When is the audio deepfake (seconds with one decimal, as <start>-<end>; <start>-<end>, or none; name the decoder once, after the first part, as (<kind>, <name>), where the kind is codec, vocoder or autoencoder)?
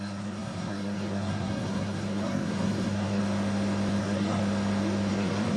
0.0-3.2 (codec, SNAC); 4.0-4.4; 5.1-5.6